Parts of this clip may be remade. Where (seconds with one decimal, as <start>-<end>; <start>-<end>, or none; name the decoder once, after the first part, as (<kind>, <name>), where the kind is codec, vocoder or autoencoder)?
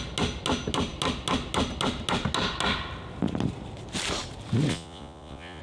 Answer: 4.7-5.6 (vocoder, Vocos)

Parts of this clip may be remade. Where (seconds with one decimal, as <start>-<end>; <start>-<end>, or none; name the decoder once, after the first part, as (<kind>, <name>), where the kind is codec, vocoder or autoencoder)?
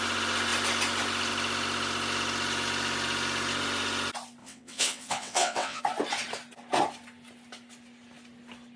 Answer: 4.4-5.8 (vocoder, WaveNeXt)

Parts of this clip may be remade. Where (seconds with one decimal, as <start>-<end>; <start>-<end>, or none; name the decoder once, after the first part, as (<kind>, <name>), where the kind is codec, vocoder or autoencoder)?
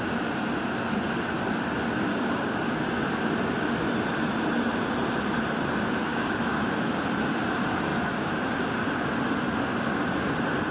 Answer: 2.1-3.0 (codec, DAC); 6.1-7.1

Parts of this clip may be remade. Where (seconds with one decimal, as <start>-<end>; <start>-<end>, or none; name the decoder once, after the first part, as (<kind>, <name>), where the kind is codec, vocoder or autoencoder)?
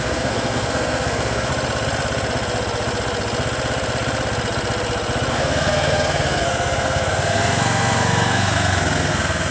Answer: 0.0-1.5 (codec, SNAC); 5.3-9.5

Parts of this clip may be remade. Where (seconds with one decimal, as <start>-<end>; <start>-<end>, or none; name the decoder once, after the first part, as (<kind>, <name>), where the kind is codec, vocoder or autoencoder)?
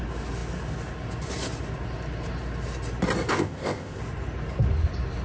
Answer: 3.3-4.0 (codec, ZipCodec)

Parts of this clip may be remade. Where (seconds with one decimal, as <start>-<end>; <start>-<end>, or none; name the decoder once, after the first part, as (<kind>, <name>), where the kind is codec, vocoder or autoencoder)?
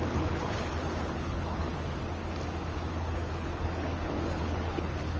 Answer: 0.0-1.7 (codec, HILCodec); 2.9-5.2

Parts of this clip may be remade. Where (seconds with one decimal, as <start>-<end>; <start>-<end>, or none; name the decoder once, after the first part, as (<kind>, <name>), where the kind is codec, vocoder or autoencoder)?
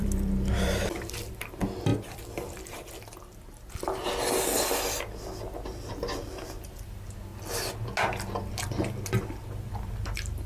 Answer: 0.0-1.9 (vocoder, BigVGAN v2); 3.7-7.3; 8.3-10.5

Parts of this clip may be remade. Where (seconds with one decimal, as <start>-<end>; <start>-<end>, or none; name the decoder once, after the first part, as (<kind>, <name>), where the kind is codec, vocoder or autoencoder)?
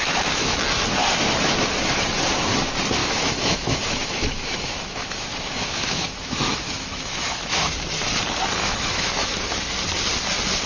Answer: 0.0-0.6 (autoencoder, DAC-VAE); 3.0-7.7; 8.6-9.4